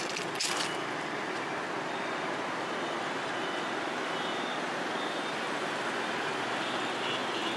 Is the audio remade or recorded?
recorded